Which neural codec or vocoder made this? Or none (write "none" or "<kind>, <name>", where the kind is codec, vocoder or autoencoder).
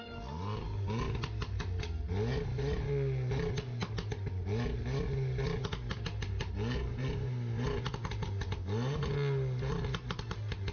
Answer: none